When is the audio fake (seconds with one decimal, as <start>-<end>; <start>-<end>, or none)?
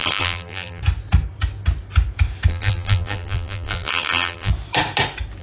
0.0-0.8; 2.5-4.5